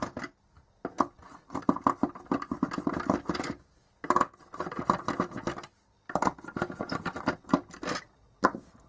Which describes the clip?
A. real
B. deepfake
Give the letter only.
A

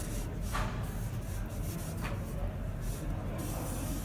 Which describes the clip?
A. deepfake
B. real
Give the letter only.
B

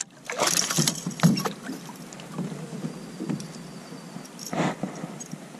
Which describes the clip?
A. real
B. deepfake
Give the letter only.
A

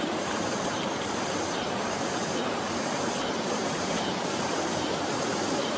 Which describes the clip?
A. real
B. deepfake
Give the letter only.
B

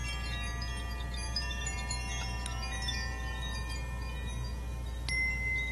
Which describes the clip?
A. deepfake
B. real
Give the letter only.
B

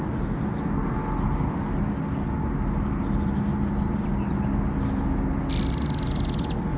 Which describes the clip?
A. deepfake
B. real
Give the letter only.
B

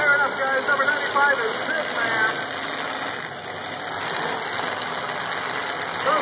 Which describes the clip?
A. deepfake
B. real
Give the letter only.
B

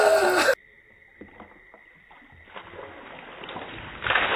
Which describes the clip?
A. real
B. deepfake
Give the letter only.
A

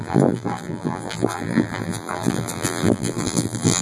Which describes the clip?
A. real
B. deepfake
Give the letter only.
B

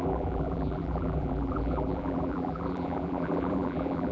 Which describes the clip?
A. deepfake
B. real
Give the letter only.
A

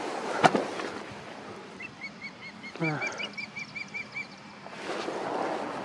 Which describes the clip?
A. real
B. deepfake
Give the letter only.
A